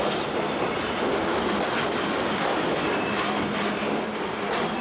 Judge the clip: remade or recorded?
recorded